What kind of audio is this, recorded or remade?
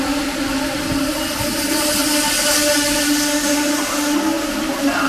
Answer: recorded